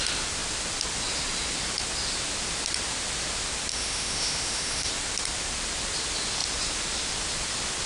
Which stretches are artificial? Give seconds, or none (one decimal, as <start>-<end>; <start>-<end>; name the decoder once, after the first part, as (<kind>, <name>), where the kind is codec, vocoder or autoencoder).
3.7-4.9 (autoencoder, DAC-VAE)